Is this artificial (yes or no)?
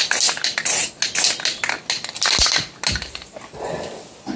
no